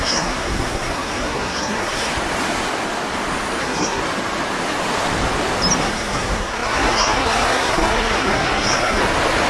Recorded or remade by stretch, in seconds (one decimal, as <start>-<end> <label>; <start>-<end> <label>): 0.0-2.1 remade; 2.1-3.6 recorded; 3.6-4.0 remade; 4.0-5.8 recorded; 5.8-9.0 remade; 9.0-9.5 recorded